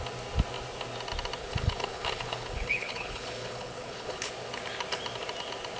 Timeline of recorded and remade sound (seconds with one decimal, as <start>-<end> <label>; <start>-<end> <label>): 0.0-1.4 recorded; 1.4-4.3 remade; 4.3-5.8 recorded